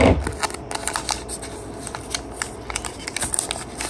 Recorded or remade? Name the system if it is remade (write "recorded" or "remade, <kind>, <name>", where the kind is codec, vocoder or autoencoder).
recorded